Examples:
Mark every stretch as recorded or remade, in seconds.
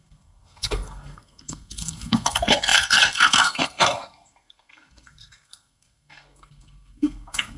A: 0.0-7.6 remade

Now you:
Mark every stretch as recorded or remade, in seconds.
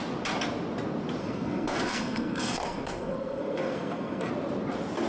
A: 0.0-1.2 recorded; 1.2-4.3 remade; 4.3-5.1 recorded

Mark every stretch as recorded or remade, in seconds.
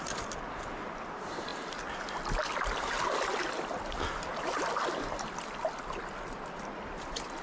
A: 0.0-7.4 recorded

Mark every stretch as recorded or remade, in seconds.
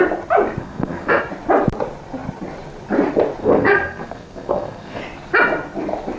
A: 0.0-0.6 recorded; 0.6-1.2 remade; 1.2-3.4 recorded; 3.4-5.0 remade; 5.0-6.2 recorded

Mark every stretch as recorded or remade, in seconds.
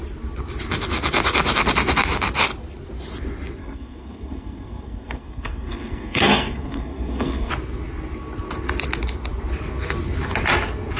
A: 0.0-3.6 recorded; 3.6-7.5 remade; 7.5-11.0 recorded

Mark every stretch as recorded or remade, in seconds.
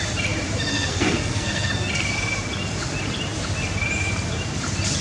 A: 0.0-0.7 recorded; 0.7-1.7 remade; 1.7-5.0 recorded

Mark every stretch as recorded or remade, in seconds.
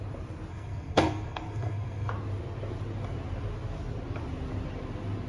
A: 0.0-0.5 recorded; 0.5-2.1 remade; 2.1-5.3 recorded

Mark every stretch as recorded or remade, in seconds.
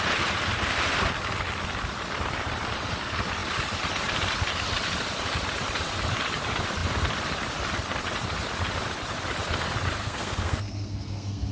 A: 0.0-10.0 recorded; 10.0-11.5 remade